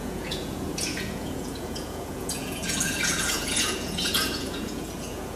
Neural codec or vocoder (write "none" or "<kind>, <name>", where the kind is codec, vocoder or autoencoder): vocoder, Vocos